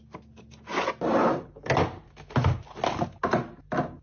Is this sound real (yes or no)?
yes